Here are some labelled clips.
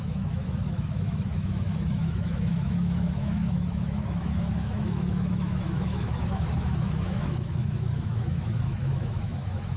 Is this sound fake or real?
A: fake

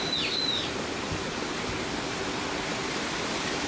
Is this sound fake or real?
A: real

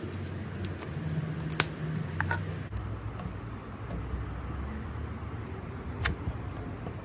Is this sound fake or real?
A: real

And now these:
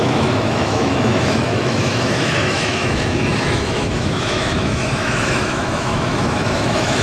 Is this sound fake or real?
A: fake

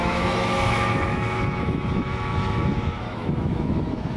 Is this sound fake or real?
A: fake